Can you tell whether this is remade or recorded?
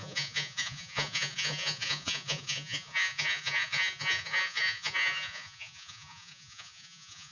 remade